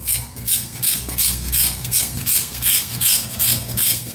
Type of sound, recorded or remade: remade